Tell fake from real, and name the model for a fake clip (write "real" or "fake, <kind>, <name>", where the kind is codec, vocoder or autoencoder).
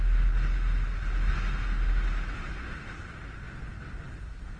real